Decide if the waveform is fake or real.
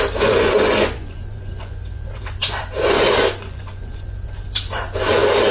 fake